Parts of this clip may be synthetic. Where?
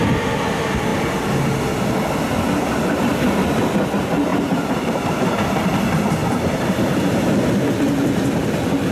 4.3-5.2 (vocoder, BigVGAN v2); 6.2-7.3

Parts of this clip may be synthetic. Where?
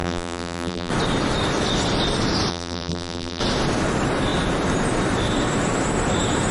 0.0-0.9 (vocoder, BigVGAN v2); 2.5-3.4